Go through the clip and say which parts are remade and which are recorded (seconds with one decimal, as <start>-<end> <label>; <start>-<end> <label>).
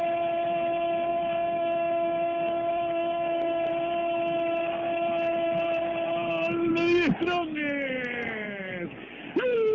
0.0-1.1 recorded; 1.1-3.7 remade; 3.7-6.7 recorded; 6.7-8.7 remade; 8.7-9.7 recorded